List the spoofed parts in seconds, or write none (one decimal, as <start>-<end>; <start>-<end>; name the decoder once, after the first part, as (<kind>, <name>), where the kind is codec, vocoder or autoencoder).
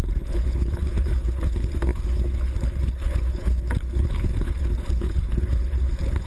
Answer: 0.0-6.3 (codec, HILCodec)